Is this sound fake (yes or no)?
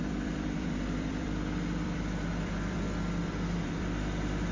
yes